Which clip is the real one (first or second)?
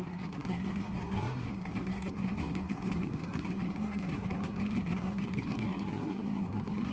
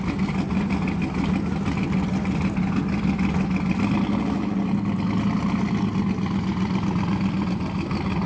second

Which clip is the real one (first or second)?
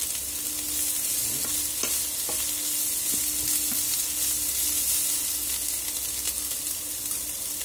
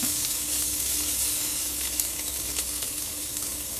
first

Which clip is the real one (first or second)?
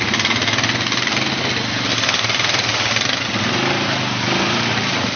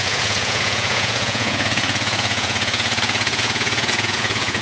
first